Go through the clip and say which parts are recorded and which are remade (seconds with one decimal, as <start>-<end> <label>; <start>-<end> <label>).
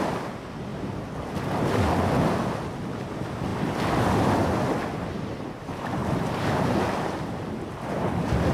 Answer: 0.0-8.5 recorded